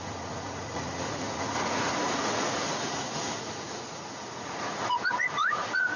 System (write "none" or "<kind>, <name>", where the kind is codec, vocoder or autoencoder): vocoder, Vocos